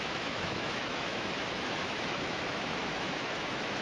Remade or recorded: remade